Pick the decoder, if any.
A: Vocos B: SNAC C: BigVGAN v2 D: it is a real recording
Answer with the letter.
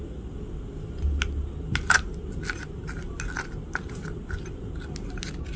D